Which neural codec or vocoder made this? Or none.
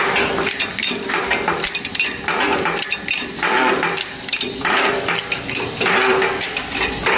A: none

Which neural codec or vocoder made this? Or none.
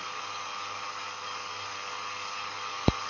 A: codec, DAC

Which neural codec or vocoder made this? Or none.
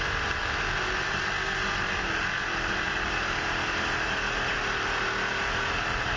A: none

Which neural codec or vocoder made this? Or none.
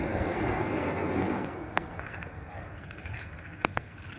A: codec, SNAC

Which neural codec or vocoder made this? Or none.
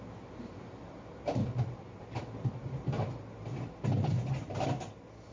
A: none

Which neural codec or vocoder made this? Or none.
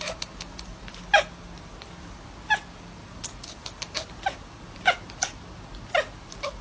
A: none